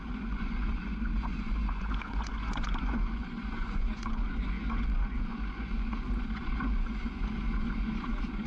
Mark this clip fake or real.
fake